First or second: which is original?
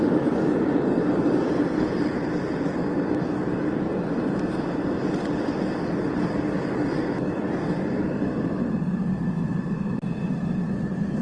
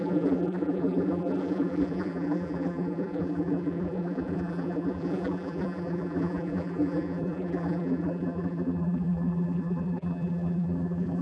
first